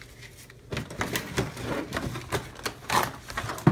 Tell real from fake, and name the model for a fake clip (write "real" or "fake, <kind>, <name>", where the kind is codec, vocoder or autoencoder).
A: real